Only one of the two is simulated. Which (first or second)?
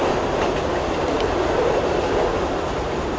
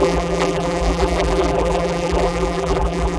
second